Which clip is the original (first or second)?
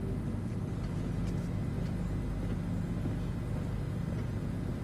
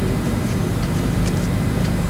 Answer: first